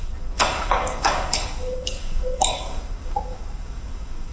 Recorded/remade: remade